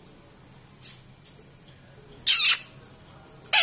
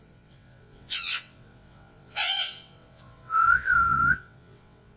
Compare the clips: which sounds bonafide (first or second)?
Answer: first